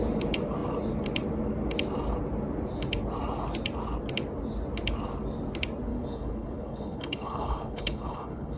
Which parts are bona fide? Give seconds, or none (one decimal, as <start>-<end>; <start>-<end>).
0.0-5.9